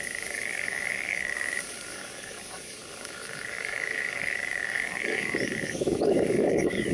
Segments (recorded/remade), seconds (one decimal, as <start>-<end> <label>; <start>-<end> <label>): 0.0-6.9 remade